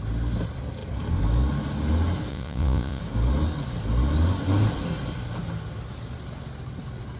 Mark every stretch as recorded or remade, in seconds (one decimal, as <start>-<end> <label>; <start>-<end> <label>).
0.0-2.3 recorded; 2.3-3.0 remade; 3.0-7.2 recorded